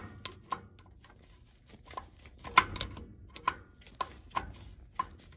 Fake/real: real